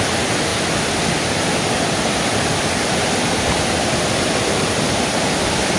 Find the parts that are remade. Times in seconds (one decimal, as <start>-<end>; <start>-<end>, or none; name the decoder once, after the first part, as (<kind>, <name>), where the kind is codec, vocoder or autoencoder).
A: 0.5-3.9 (vocoder, BigVGAN v2)